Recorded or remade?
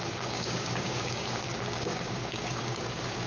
remade